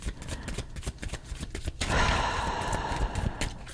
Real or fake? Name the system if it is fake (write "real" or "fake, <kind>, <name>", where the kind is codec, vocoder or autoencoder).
real